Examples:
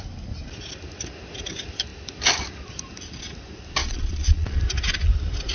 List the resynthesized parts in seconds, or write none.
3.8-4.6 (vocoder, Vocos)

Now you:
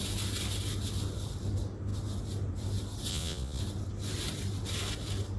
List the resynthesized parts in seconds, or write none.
3.1-3.6 (vocoder, Vocos)

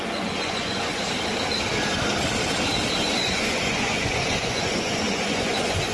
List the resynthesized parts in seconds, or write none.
0.0-1.0 (vocoder, Vocos); 3.0-5.9

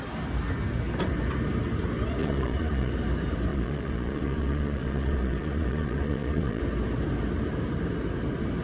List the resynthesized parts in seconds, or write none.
2.2-2.9 (vocoder, Vocos); 3.5-6.6